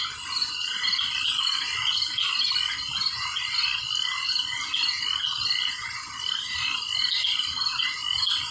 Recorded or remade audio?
recorded